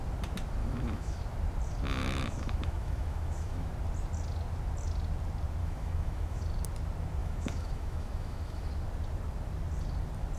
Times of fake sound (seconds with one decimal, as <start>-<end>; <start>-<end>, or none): 0.6-1.2; 2.0-3.7; 5.6-6.4; 7.2-8.7